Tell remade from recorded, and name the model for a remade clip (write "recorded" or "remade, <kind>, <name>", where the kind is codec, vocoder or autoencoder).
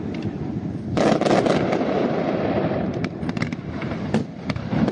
remade, vocoder, BigVGAN v2